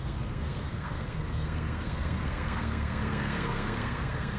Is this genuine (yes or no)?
no